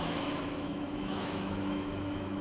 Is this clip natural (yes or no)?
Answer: no